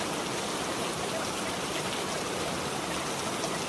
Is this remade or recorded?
recorded